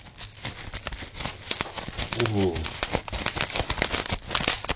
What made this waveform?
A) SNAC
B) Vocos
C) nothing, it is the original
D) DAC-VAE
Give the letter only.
C